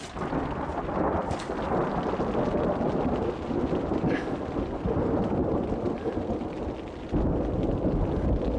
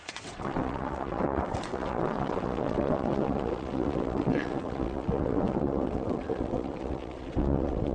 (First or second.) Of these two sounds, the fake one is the second